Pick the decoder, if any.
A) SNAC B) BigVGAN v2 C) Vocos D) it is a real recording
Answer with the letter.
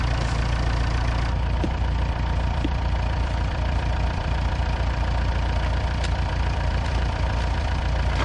B